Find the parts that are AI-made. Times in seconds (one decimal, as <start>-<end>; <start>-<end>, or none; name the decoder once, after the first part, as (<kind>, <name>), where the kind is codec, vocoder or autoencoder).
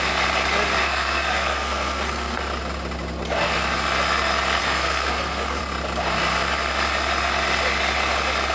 0.8-2.4 (codec, SNAC); 4.6-5.6